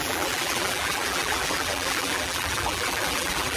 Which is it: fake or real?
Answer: fake